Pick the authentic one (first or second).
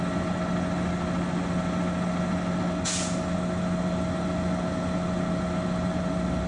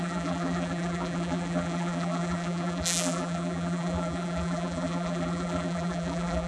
first